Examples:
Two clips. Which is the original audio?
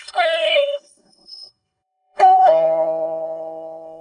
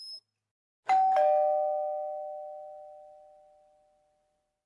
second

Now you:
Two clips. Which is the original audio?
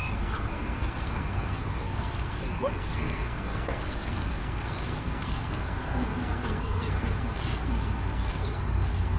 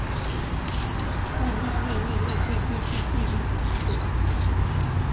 second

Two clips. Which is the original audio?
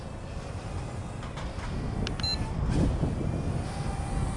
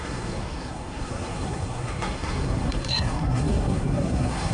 first